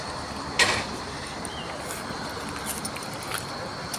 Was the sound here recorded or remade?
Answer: recorded